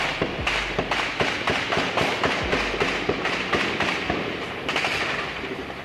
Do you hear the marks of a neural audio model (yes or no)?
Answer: no